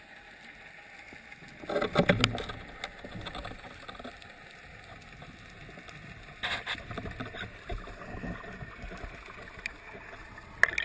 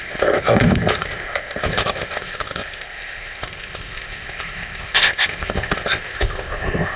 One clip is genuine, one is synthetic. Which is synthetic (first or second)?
second